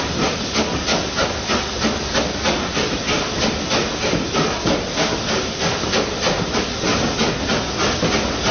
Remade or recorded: recorded